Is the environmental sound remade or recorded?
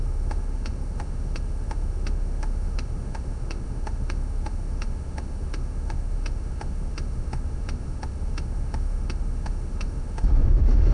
remade